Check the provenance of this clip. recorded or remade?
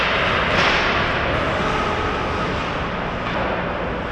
recorded